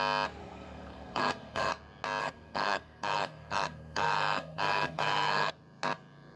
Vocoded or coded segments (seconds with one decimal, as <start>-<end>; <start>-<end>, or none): 0.4-1.7; 2.2-5.5